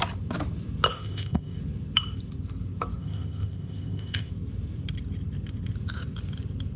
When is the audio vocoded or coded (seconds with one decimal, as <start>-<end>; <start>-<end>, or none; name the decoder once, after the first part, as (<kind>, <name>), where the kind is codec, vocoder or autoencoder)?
0.9-1.6 (codec, ZipCodec); 3.0-4.3